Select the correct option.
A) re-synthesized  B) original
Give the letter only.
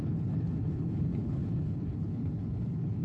A